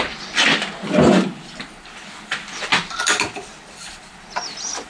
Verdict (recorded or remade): remade